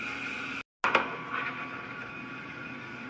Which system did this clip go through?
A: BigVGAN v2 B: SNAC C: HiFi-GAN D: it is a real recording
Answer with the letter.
D